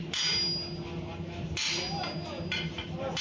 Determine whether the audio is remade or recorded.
recorded